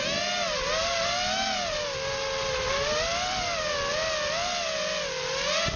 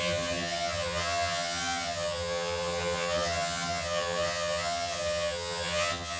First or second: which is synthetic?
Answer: second